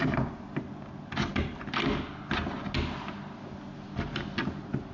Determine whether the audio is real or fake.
real